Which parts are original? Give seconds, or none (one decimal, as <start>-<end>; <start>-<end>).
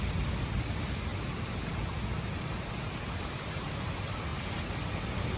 0.0-5.4